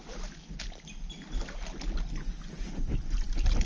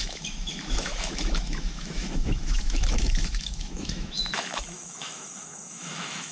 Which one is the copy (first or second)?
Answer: second